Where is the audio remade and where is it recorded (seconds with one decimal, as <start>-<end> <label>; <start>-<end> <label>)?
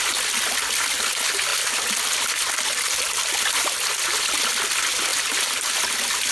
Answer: 0.0-6.3 recorded